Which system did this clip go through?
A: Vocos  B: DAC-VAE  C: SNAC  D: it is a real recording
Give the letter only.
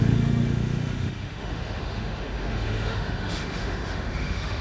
B